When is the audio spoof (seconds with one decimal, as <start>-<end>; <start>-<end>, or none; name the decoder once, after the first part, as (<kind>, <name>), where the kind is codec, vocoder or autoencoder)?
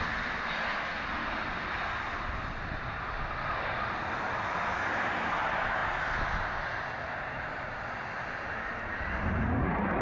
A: none